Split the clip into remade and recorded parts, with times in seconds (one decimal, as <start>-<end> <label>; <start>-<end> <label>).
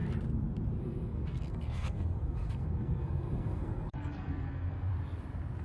0.0-0.8 recorded; 0.8-4.9 remade; 4.9-5.6 recorded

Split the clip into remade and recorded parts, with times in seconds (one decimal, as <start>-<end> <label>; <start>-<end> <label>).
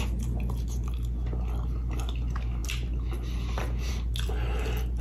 0.0-5.0 recorded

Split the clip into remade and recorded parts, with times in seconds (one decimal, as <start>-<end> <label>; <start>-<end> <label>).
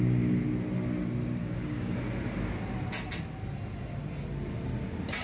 0.0-1.4 recorded; 1.4-2.0 remade; 2.0-5.2 recorded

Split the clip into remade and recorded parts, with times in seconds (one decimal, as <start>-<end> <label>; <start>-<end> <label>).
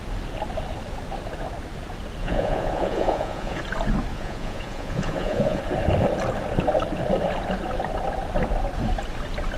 0.0-2.2 recorded; 2.2-3.6 remade; 3.6-4.1 recorded; 4.1-5.6 remade; 5.6-9.6 recorded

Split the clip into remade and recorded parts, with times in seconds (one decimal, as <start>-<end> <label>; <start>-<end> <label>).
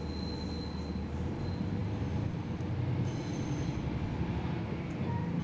0.0-1.8 recorded; 1.8-4.3 remade; 4.3-5.4 recorded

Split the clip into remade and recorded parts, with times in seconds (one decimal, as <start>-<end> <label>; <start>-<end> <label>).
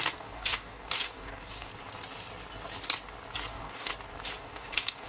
0.0-1.7 remade; 1.7-3.5 recorded; 3.5-3.9 remade; 3.9-4.4 recorded; 4.4-5.1 remade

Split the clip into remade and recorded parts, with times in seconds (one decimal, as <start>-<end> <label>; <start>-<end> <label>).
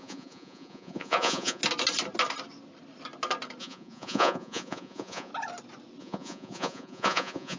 0.0-1.6 remade; 1.6-3.6 recorded; 3.6-5.3 remade; 5.3-6.0 recorded; 6.0-7.6 remade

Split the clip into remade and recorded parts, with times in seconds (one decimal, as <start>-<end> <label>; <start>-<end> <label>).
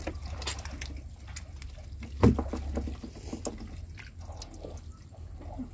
0.0-5.7 recorded